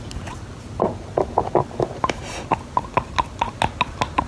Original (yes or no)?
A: yes